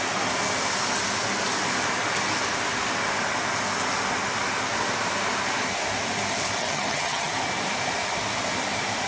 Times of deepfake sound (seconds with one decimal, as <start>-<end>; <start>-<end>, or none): 6.6-7.3